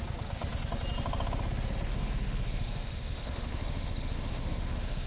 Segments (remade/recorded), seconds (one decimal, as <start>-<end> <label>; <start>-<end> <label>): 0.0-1.9 recorded; 1.9-5.1 remade

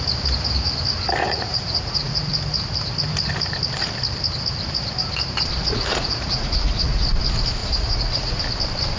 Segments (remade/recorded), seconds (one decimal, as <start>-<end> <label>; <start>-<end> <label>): 0.0-1.2 recorded; 1.2-2.3 remade; 2.3-5.6 recorded; 5.6-7.1 remade; 7.1-7.6 recorded; 7.6-8.4 remade; 8.4-9.0 recorded

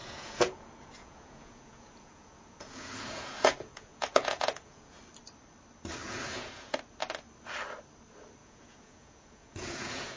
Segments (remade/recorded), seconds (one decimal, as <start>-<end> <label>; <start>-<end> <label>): 0.0-5.0 remade; 5.0-6.0 recorded; 6.0-6.7 remade; 6.7-8.4 recorded; 8.4-10.2 remade

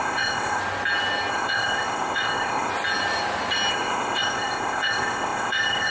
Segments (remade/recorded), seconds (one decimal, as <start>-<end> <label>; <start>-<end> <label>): 0.0-0.6 remade; 0.6-1.3 recorded; 1.3-2.7 remade; 2.7-3.7 recorded; 3.7-5.9 remade

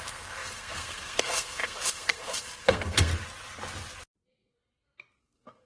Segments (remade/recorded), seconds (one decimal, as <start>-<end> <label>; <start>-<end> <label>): 0.0-3.1 remade; 3.1-5.2 recorded; 5.2-5.7 remade

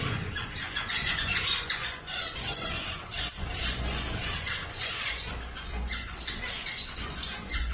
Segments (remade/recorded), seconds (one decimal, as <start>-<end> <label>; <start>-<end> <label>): 0.0-7.7 remade

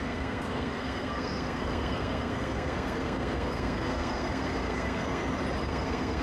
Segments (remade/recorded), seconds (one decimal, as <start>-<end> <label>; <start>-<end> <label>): 0.0-5.2 remade; 5.2-5.7 recorded; 5.7-6.2 remade